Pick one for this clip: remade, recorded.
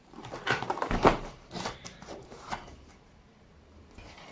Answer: remade